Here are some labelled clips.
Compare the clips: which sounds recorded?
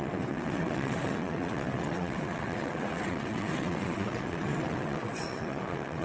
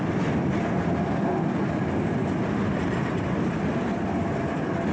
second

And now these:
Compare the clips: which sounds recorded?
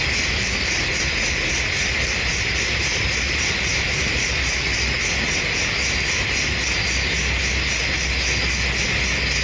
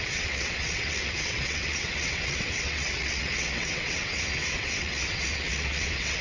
first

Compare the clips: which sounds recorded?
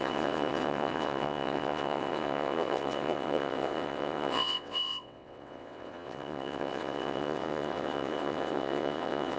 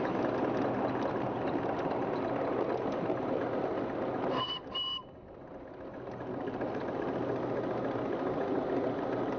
second